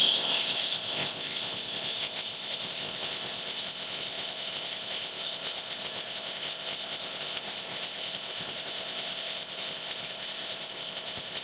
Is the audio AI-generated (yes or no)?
yes